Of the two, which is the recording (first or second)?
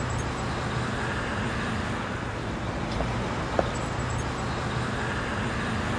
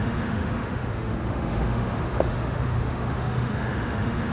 first